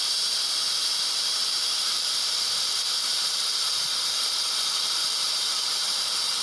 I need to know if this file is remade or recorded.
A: remade